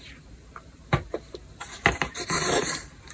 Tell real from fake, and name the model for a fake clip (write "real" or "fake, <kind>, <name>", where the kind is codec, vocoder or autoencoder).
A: fake, vocoder, BigVGAN v2